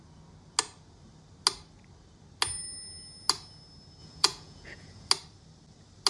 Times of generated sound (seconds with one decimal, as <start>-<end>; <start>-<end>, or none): 4.0-5.1